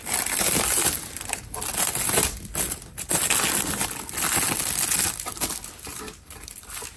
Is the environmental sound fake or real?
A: real